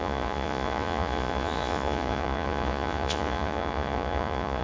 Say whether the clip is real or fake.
fake